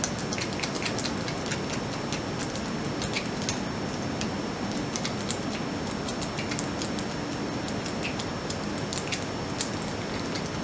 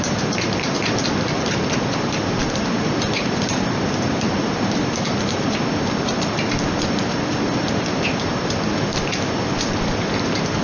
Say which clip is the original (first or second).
first